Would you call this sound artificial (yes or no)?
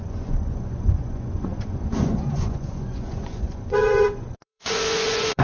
yes